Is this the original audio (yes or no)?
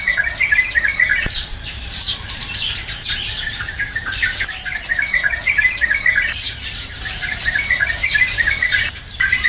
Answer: no